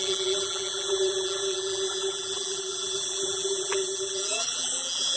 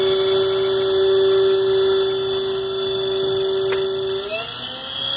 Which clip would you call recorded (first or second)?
second